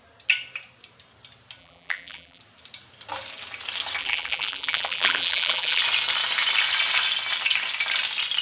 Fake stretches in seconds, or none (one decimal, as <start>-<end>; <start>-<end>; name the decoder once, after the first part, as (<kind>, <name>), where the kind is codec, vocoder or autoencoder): 1.6-2.4 (vocoder, BigVGAN v2); 4.0-5.8